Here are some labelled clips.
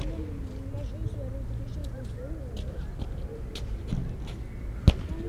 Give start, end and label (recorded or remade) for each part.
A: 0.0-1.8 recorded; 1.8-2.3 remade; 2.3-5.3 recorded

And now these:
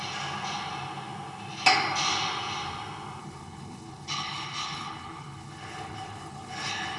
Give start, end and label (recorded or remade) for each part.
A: 0.0-3.2 recorded; 3.2-7.0 remade

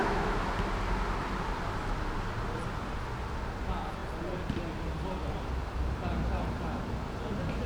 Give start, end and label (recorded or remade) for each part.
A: 0.0-0.5 remade; 0.5-7.7 recorded

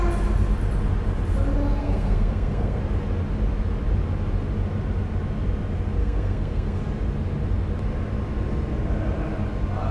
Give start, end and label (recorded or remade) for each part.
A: 0.0-1.8 recorded; 1.8-2.8 remade; 2.8-6.0 recorded; 6.0-6.8 remade; 6.8-9.9 recorded

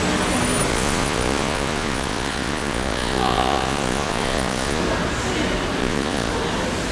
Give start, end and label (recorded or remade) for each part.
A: 0.0-0.7 recorded; 0.7-4.8 remade; 4.8-5.8 recorded; 5.8-6.3 remade; 6.3-6.9 recorded